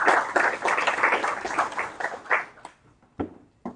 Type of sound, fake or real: real